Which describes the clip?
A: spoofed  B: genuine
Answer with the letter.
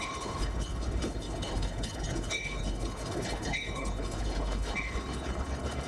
A